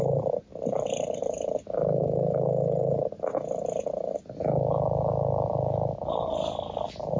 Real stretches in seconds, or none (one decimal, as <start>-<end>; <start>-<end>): 0.0-7.2